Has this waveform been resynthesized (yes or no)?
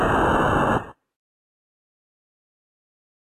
no